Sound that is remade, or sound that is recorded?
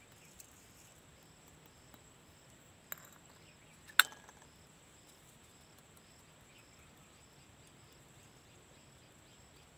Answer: recorded